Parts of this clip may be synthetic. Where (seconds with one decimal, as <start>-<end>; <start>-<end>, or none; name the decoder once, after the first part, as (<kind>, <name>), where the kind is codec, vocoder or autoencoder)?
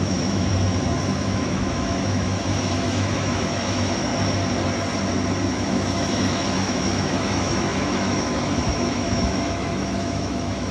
0.0-0.5 (autoencoder, DAC-VAE); 1.0-4.1; 5.4-10.7